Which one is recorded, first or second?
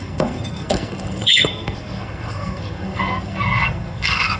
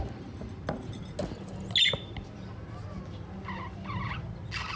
second